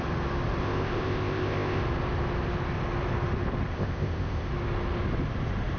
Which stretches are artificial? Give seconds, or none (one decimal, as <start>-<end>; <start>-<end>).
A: 0.6-1.8; 3.7-4.5